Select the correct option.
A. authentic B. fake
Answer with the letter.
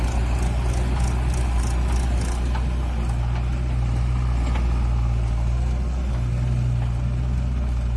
A